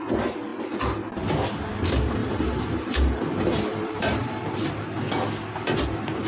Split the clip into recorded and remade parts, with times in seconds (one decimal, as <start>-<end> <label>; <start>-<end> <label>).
0.0-2.2 recorded; 2.2-4.7 remade; 4.7-6.3 recorded